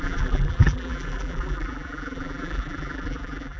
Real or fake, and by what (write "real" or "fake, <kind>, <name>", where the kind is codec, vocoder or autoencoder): fake, vocoder, BigVGAN v2